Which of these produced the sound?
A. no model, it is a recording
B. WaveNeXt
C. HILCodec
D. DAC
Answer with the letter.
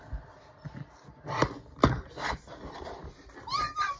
A